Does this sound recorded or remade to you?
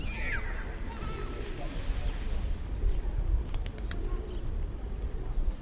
recorded